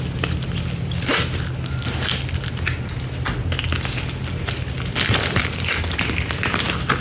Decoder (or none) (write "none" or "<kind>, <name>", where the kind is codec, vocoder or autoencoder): none